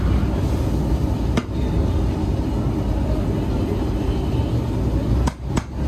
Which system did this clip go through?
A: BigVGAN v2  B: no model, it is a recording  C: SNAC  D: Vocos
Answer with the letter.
B